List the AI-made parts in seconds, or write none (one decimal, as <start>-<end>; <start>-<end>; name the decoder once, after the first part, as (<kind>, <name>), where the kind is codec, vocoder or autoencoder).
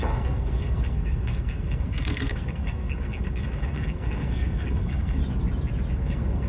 0.0-5.2 (codec, SNAC); 5.9-6.5